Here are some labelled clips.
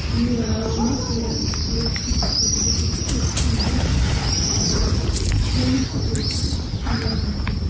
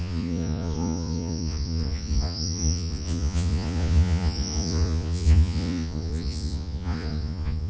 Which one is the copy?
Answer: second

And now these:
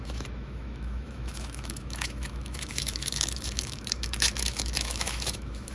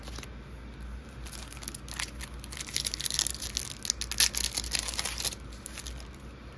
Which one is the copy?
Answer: first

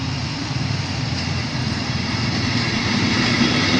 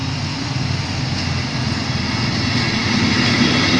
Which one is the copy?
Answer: first